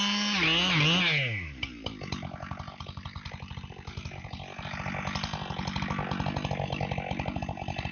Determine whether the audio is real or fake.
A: real